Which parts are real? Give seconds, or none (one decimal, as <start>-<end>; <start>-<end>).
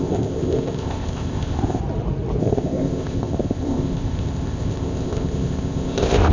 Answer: 1.8-2.4